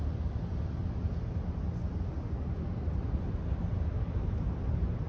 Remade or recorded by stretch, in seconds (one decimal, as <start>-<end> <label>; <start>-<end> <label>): 0.0-5.1 recorded

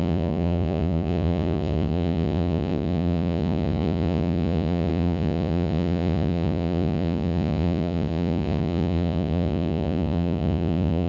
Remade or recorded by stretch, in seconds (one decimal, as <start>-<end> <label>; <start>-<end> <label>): 0.0-11.1 remade